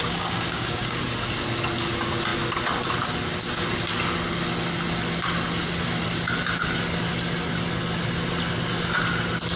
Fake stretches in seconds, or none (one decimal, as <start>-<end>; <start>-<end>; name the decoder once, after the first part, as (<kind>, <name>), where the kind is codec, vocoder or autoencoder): 0.0-1.0 (codec, DAC)